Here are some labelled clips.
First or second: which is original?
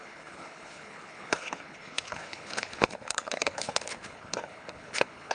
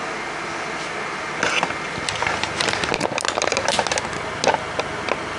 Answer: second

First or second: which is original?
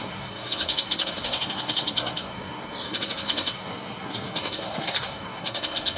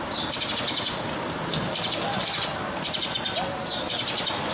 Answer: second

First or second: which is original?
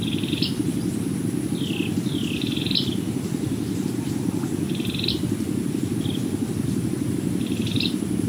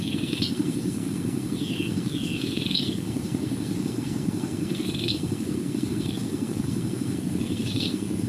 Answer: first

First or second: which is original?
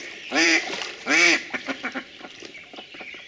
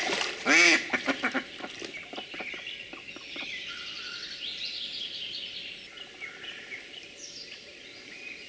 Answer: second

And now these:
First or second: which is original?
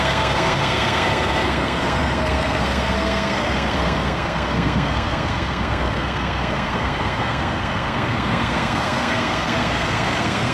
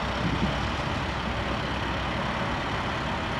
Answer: second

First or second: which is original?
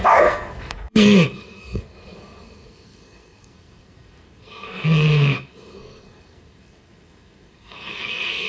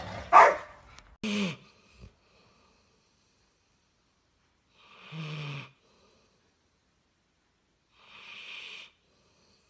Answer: second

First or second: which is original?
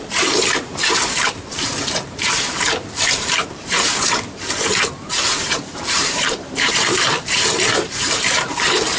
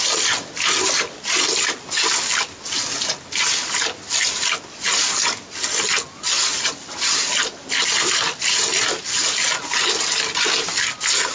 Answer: second